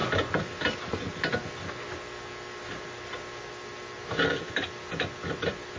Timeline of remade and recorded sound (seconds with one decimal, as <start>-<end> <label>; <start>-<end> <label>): 0.0-2.7 recorded; 2.7-5.8 remade

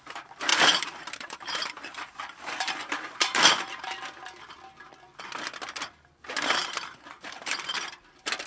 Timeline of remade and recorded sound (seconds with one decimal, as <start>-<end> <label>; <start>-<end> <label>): 0.0-0.5 recorded; 0.5-4.1 remade; 4.1-6.6 recorded; 6.6-7.9 remade; 7.9-8.5 recorded